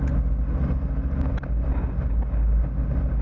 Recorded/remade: recorded